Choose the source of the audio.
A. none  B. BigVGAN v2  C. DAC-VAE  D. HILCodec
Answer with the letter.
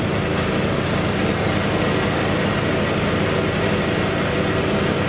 A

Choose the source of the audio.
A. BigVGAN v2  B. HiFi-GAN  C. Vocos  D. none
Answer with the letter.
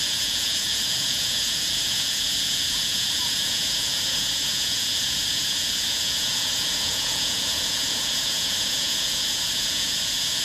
C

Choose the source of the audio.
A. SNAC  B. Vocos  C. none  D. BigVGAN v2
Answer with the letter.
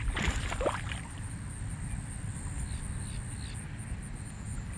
C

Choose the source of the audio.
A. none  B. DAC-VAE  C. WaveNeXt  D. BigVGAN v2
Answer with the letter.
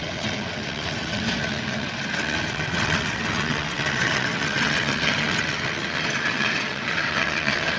C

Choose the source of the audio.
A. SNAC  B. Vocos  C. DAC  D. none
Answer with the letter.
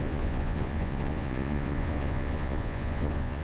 B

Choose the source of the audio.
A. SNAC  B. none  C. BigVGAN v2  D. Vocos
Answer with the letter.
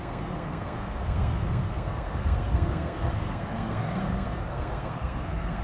A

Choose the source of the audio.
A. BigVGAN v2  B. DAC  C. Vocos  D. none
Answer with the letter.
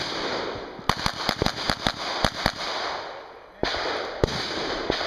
D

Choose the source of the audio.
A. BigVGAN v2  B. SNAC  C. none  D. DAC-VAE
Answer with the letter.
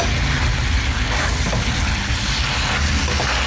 C